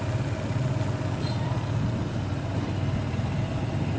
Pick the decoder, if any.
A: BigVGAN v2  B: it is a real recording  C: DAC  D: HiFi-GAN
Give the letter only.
A